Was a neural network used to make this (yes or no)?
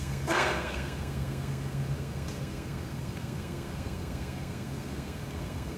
yes